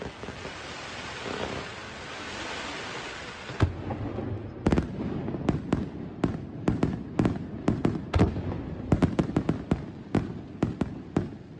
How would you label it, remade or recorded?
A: recorded